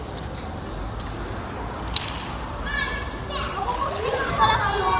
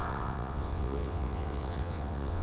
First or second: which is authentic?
first